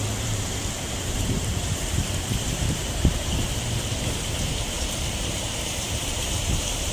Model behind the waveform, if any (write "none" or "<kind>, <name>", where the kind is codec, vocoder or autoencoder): vocoder, BigVGAN v2